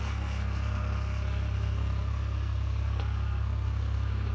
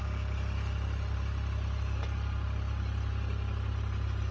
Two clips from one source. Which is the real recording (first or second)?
second